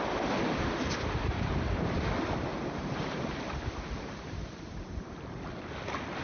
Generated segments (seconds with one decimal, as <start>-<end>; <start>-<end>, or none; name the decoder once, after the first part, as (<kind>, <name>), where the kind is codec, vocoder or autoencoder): 2.5-5.1 (vocoder, BigVGAN v2)